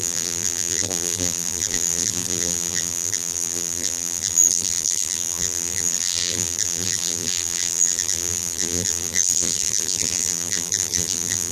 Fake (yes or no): yes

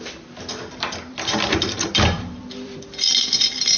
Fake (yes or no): yes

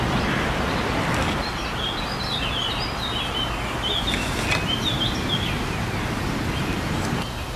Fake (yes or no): no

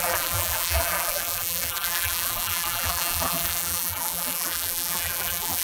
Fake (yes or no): yes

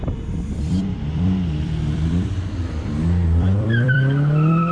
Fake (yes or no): yes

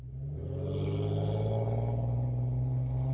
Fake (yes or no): no